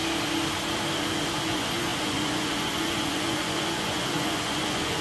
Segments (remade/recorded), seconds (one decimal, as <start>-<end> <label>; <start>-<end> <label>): 0.0-1.3 recorded; 1.3-5.0 remade